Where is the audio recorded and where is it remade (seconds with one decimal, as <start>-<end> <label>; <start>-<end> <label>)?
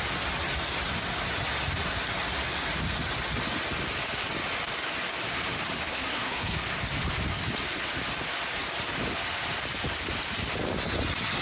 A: 0.0-5.9 recorded; 5.9-6.6 remade; 6.6-11.4 recorded